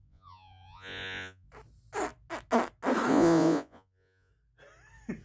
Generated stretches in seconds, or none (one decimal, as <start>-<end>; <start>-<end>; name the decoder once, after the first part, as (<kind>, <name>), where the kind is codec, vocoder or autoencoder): 0.0-1.5 (vocoder, Vocos); 3.1-4.3